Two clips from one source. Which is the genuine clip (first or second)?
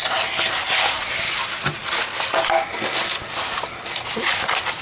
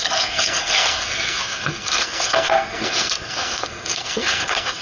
first